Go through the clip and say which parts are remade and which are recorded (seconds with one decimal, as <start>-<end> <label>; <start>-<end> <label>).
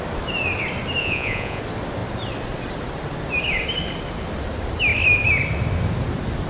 0.0-1.0 recorded; 1.0-1.6 remade; 1.6-6.5 recorded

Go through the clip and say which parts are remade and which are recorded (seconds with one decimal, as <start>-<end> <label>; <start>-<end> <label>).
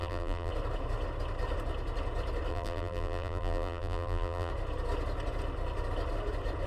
0.0-0.5 remade; 0.5-2.5 recorded; 2.5-4.5 remade; 4.5-6.7 recorded